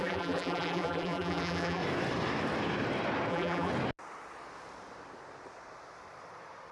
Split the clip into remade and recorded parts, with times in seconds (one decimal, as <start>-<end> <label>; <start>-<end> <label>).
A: 0.0-1.8 remade; 1.8-3.3 recorded; 3.3-3.7 remade; 3.7-6.7 recorded